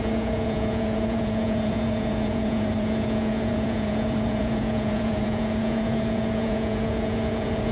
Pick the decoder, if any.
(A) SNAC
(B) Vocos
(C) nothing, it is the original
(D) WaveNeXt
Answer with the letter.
B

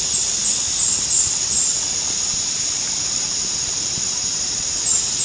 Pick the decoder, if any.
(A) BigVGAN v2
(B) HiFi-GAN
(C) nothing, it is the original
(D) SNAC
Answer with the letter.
C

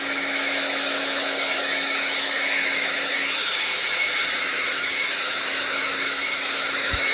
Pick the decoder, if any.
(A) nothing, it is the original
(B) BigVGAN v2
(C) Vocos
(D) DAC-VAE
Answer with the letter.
D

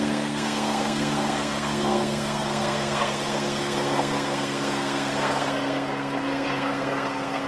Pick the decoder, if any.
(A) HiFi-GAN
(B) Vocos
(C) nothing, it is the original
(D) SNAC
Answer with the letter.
D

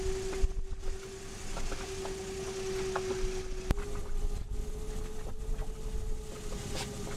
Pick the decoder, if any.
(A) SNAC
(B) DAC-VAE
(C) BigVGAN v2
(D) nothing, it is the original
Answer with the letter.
D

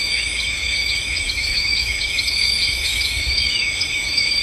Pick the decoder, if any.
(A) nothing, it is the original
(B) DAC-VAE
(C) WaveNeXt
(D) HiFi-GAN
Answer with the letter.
B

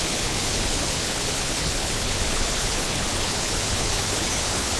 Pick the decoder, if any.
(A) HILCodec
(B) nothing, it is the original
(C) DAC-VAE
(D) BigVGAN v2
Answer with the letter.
A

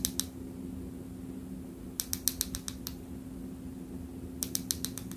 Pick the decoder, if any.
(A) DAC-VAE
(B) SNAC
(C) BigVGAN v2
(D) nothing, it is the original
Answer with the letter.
D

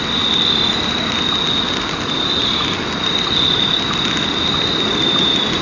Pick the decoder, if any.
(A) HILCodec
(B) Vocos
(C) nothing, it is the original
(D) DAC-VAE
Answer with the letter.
C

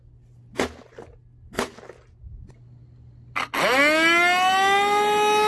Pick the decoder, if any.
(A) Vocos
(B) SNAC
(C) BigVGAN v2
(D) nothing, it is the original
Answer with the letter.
D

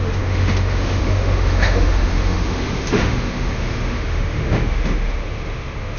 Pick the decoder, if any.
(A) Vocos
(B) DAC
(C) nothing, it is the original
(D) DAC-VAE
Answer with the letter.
D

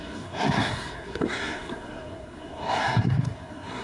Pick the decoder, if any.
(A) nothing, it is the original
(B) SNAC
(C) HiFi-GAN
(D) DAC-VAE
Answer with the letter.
B